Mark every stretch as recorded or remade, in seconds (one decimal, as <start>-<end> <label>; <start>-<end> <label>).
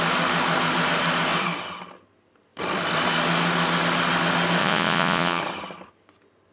0.0-4.6 recorded; 4.6-5.4 remade; 5.4-6.5 recorded